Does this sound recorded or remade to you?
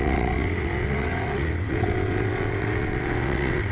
remade